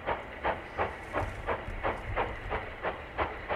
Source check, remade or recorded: recorded